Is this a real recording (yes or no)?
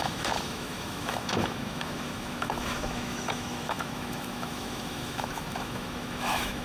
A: no